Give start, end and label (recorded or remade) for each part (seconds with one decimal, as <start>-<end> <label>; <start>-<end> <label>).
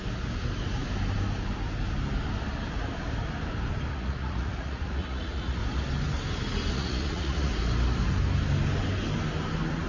0.0-3.9 recorded; 3.9-5.6 remade; 5.6-6.7 recorded; 6.7-7.5 remade; 7.5-9.9 recorded